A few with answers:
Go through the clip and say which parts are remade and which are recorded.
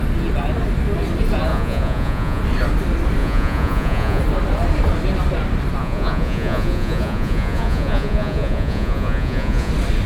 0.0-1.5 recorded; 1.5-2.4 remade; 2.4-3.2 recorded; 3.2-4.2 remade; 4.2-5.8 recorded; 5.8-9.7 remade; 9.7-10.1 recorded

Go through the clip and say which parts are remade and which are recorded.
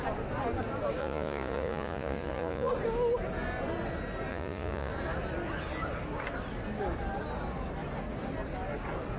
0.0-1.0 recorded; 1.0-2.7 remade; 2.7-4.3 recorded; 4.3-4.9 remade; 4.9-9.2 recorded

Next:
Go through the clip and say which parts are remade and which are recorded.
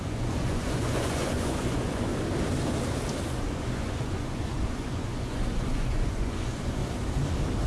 0.0-2.1 remade; 2.1-3.3 recorded; 3.3-6.8 remade; 6.8-7.7 recorded